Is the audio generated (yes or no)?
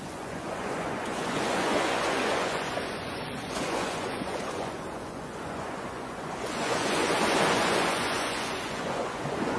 yes